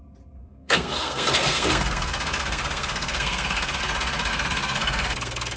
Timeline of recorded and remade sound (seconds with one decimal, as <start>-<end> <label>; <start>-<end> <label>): 0.0-0.4 recorded; 0.4-3.8 remade; 3.8-4.3 recorded; 4.3-5.6 remade